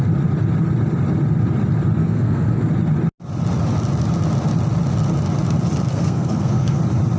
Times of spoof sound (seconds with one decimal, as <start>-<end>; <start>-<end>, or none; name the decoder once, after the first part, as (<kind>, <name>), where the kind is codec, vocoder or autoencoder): 2.0-2.7 (codec, SNAC); 5.9-6.8